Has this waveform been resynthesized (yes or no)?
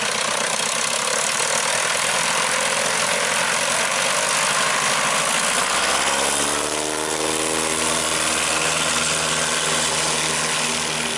no